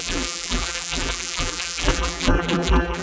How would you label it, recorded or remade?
remade